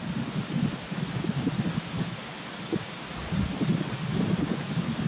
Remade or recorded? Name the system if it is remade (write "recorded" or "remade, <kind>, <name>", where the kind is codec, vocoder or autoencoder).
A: remade, vocoder, BigVGAN v2